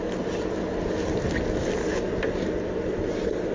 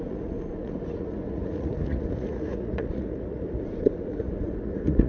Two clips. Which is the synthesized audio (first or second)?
second